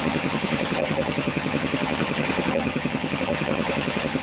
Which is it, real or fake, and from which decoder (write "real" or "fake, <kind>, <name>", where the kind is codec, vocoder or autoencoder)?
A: fake, vocoder, HiFi-GAN